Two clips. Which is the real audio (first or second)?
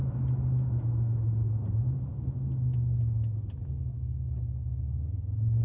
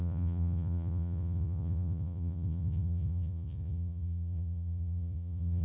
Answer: first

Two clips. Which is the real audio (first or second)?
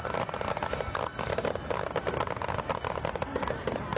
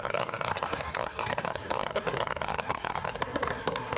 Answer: first